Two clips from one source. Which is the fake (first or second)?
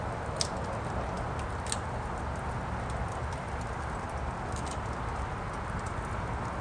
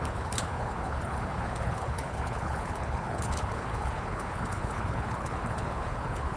second